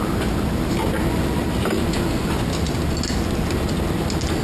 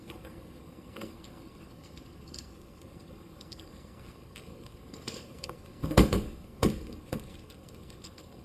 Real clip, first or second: first